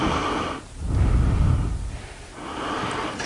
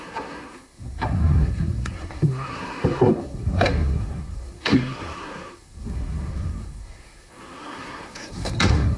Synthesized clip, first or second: second